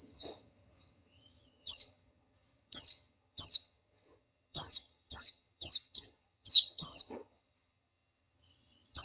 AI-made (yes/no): yes